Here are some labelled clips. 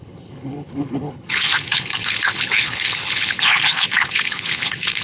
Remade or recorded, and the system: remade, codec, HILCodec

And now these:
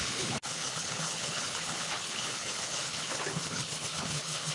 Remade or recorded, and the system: remade, codec, HILCodec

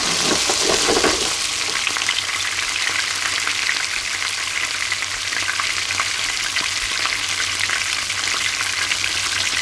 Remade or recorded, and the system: recorded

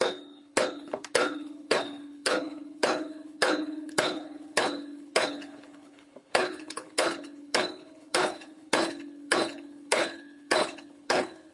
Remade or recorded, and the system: remade, codec, HILCodec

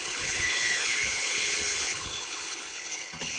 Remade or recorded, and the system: remade, codec, HILCodec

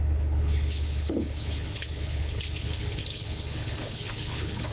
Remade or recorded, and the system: remade, codec, HILCodec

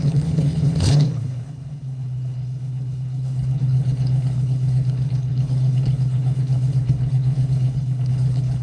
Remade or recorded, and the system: remade, codec, HILCodec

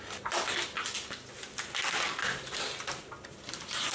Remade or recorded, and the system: recorded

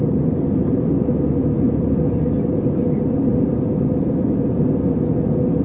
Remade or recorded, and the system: recorded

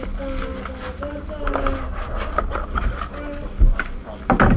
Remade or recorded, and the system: recorded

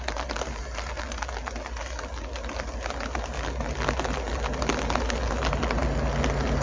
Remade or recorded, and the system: recorded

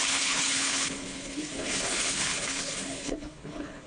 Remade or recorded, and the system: remade, codec, HILCodec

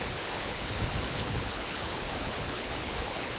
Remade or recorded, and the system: remade, codec, HILCodec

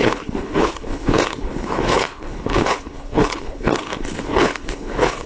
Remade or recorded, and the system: remade, codec, HILCodec